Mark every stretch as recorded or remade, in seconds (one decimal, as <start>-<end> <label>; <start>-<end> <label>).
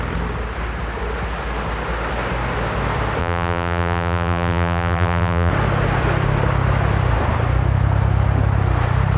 0.0-3.2 recorded; 3.2-5.5 remade; 5.5-9.2 recorded